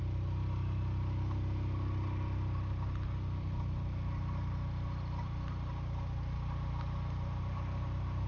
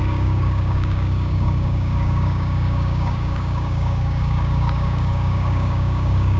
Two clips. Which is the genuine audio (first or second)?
first